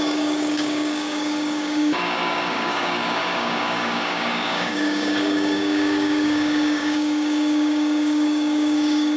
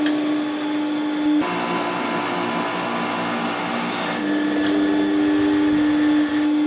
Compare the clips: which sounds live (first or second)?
second